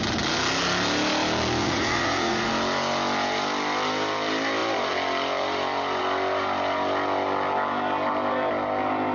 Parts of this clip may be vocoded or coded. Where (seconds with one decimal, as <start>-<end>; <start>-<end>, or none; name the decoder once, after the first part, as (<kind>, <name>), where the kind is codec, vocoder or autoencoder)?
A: 1.6-2.5 (vocoder, Vocos)